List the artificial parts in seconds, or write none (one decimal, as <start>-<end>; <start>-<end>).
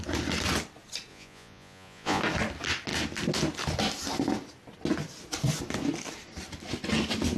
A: 1.1-2.2